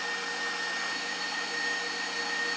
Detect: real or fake real